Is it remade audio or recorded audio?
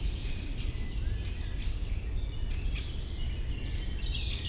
recorded